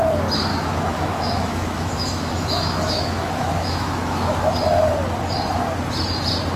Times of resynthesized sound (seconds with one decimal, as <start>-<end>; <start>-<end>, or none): 0.5-4.5

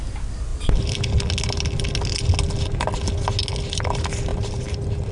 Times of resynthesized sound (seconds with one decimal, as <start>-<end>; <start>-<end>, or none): 0.5-1.1; 4.3-5.1

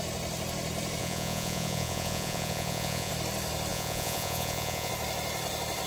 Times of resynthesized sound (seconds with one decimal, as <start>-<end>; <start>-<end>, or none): 1.0-3.1; 3.7-4.9

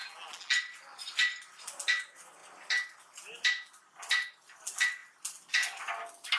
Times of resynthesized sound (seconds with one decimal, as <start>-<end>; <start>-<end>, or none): 0.0-0.6

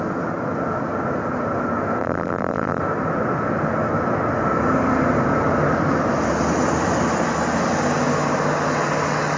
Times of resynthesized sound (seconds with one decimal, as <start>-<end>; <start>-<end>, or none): 2.0-2.8